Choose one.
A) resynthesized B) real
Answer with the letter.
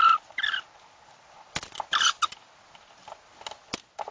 B